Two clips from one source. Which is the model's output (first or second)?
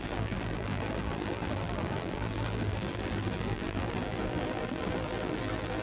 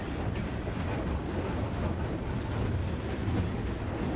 first